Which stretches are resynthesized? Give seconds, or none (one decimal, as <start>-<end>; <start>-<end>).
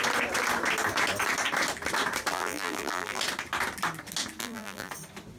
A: 2.3-3.2; 4.4-4.9